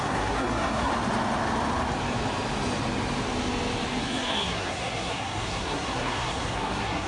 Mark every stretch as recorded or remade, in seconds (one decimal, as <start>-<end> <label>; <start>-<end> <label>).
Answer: 0.0-0.9 remade; 0.9-4.0 recorded; 4.0-7.1 remade